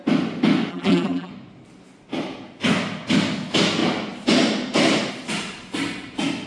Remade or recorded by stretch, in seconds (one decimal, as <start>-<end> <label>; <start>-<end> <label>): 0.0-0.7 recorded; 0.7-1.3 remade; 1.3-6.5 recorded